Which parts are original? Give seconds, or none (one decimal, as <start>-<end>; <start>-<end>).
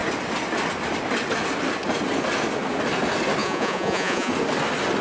0.0-3.4; 4.3-5.0